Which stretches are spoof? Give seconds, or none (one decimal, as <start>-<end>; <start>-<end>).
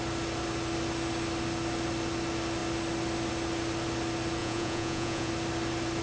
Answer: 4.4-5.3